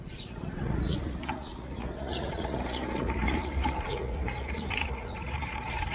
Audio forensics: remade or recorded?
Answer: remade